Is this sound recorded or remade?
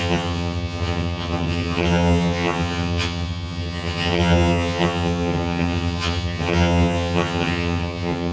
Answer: remade